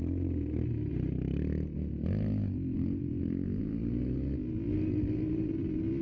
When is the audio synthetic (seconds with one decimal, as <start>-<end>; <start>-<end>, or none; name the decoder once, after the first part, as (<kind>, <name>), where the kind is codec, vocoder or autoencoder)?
none